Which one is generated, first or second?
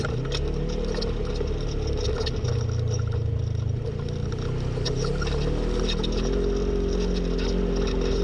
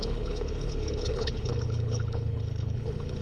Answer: second